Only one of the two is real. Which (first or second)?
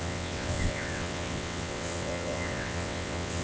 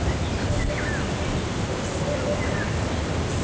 second